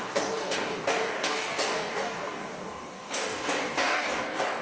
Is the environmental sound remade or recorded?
remade